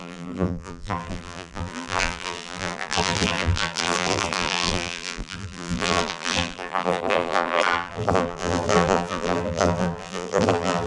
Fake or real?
fake